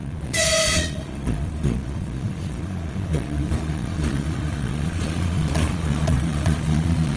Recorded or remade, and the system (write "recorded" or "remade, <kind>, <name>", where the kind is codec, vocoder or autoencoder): remade, vocoder, Vocos